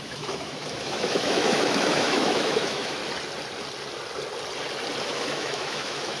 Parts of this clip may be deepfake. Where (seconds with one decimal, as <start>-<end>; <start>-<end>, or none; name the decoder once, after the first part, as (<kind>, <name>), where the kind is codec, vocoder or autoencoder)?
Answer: 0.0-3.0 (autoencoder, DAC-VAE); 5.0-6.2